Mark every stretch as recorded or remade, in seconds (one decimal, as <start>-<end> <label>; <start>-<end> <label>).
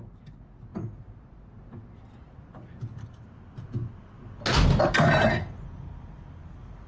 0.0-6.9 recorded